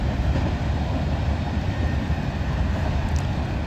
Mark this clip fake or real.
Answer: real